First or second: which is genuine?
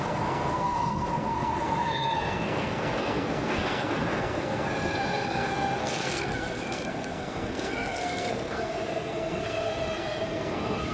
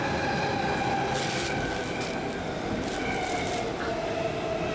second